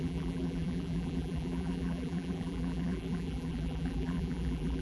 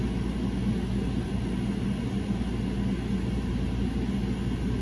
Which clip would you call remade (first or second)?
first